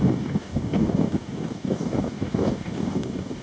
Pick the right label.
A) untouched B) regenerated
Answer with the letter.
B